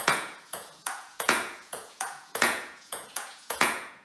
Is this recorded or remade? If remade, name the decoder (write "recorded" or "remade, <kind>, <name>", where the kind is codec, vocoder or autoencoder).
remade, vocoder, Vocos